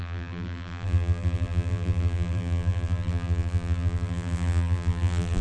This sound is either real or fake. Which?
fake